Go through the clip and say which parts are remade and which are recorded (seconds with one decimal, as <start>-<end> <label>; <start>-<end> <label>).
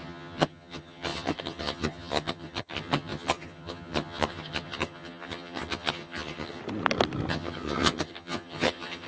0.0-6.6 remade; 6.6-7.3 recorded; 7.3-9.1 remade